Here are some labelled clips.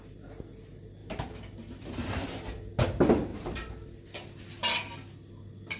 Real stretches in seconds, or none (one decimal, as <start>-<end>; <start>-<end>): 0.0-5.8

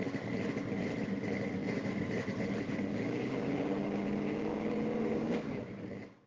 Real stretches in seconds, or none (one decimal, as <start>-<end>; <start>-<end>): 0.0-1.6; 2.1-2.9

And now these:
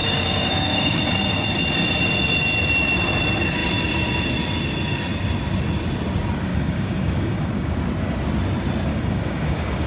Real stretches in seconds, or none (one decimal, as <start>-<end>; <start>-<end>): 1.0-6.5; 7.7-8.9

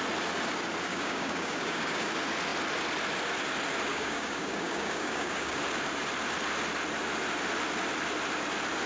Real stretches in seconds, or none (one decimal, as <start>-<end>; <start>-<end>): 0.0-0.9; 2.1-3.9; 5.6-8.9